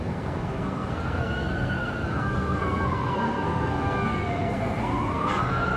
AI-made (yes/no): yes